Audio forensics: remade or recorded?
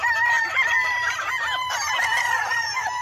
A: remade